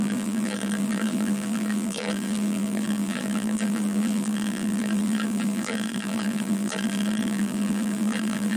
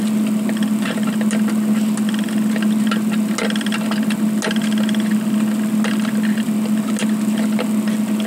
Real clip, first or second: second